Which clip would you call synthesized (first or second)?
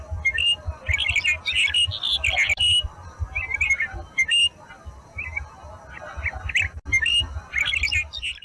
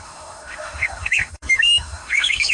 second